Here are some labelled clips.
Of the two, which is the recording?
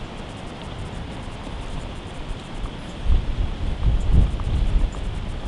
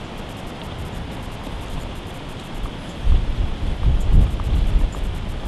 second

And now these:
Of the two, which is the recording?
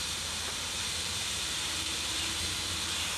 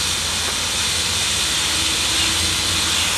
second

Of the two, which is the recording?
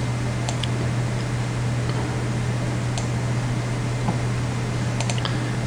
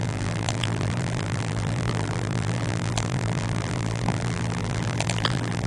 first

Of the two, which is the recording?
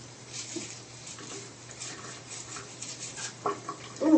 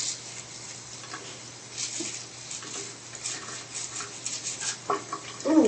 second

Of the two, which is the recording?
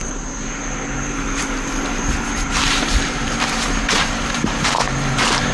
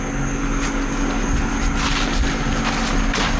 second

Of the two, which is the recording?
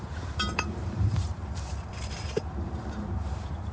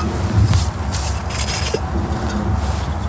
second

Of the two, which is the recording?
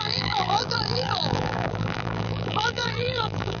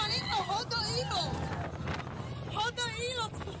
second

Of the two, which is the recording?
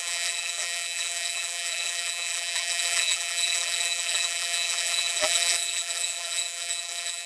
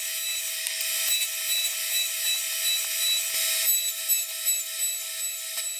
second